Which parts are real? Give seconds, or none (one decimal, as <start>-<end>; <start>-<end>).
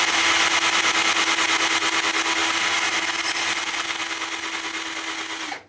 0.0-5.7